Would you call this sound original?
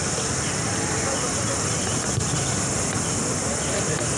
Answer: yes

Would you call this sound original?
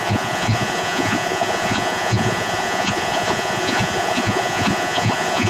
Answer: no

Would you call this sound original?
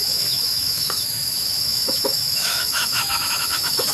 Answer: no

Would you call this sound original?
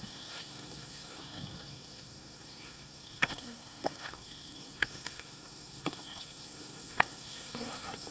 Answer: no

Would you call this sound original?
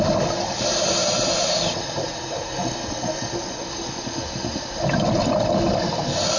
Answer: yes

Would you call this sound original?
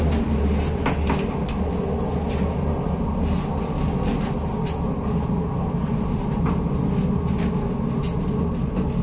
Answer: yes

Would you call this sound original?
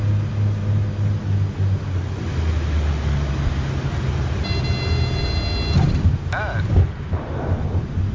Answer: yes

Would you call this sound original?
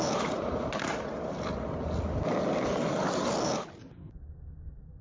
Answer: yes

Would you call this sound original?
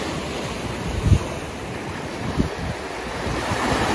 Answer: yes